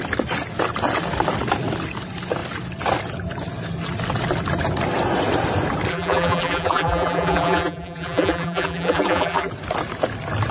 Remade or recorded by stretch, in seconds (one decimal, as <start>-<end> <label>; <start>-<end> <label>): 0.0-5.9 recorded; 5.9-9.5 remade; 9.5-10.5 recorded